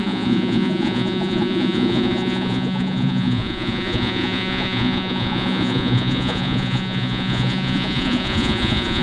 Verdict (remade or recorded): remade